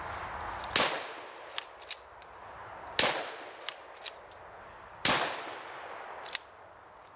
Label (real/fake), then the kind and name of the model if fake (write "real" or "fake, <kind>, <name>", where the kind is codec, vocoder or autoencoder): real